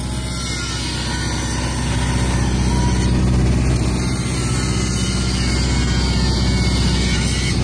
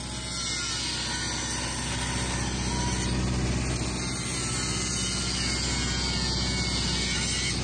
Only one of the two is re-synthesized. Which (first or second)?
first